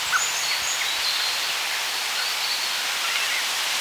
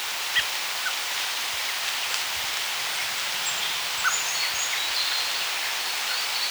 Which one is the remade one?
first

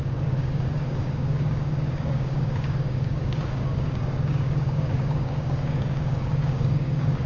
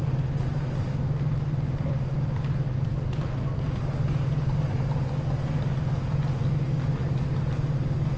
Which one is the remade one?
first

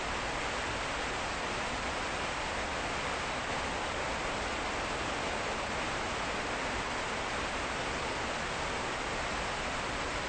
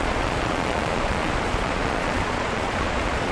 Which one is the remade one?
second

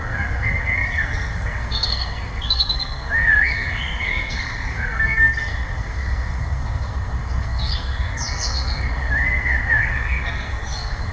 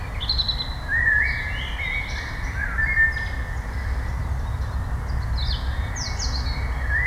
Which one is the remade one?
first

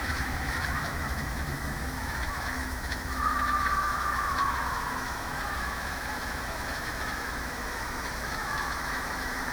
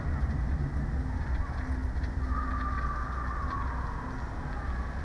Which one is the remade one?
first